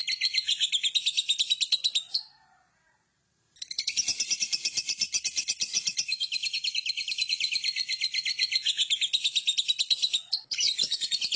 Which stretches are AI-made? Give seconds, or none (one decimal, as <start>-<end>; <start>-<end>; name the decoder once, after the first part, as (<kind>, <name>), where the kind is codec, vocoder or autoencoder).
none